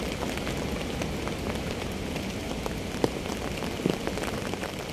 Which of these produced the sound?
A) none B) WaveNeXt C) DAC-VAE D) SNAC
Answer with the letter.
A